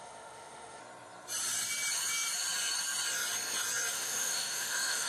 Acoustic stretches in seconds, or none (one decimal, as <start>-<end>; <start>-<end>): 0.8-3.9